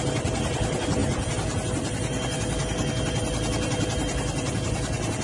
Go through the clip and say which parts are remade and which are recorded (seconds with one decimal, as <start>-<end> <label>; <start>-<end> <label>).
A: 0.0-5.2 recorded